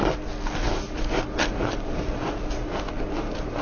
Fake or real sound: real